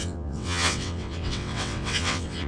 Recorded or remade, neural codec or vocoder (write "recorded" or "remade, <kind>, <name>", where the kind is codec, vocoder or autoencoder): remade, vocoder, WaveNeXt